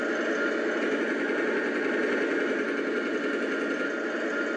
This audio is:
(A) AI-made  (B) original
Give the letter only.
B